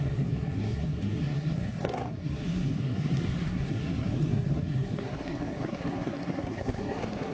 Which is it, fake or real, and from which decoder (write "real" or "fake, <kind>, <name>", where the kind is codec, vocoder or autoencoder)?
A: fake, codec, SNAC